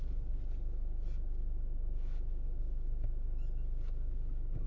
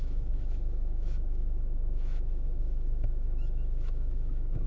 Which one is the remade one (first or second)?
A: second